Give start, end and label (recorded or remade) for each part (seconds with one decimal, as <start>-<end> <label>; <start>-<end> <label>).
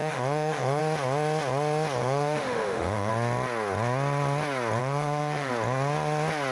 0.0-0.8 remade; 0.8-2.0 recorded; 2.0-3.1 remade; 3.1-4.8 recorded; 4.8-5.5 remade; 5.5-6.5 recorded